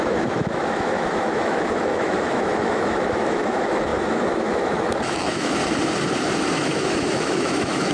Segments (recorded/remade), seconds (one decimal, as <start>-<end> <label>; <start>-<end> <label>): 0.0-5.6 remade; 5.6-6.5 recorded; 6.5-7.9 remade